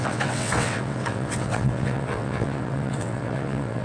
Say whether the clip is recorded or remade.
remade